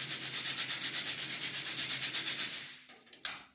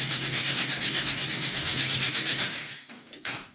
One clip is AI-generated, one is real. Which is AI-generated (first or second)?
second